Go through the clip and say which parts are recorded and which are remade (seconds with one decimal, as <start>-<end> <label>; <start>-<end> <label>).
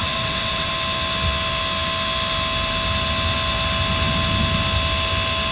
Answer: 0.0-0.7 remade; 0.7-5.5 recorded